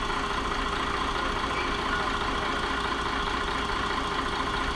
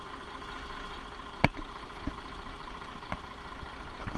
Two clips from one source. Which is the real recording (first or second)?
first